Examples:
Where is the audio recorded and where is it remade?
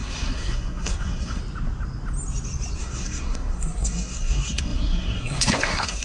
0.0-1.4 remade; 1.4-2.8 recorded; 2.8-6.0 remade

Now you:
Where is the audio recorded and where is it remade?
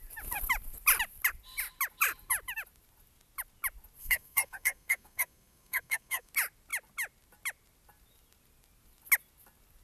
0.0-4.0 recorded; 4.0-6.3 remade; 6.3-9.8 recorded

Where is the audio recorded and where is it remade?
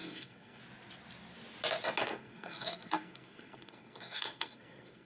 0.0-0.6 remade; 0.6-2.0 recorded; 2.0-5.1 remade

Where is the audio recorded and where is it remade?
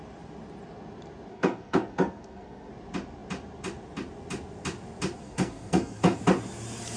0.0-1.3 recorded; 1.3-2.7 remade; 2.7-5.2 recorded; 5.2-6.2 remade; 6.2-7.0 recorded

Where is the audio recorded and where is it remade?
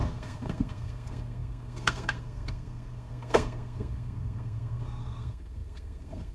0.0-6.3 remade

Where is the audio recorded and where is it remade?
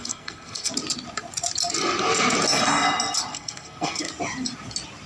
0.0-0.7 remade; 0.7-3.3 recorded; 3.3-4.1 remade; 4.1-5.1 recorded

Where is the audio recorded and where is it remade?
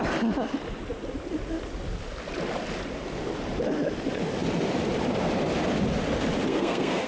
0.0-6.5 recorded; 6.5-7.1 remade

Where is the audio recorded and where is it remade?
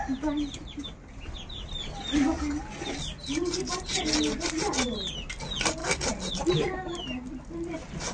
0.0-8.1 recorded